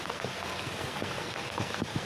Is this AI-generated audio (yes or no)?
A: yes